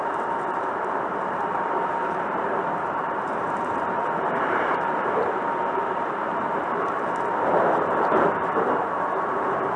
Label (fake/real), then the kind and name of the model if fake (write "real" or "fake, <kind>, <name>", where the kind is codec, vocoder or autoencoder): fake, vocoder, BigVGAN v2